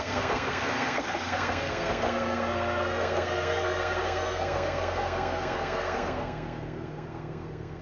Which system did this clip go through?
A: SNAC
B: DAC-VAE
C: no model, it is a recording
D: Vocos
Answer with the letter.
A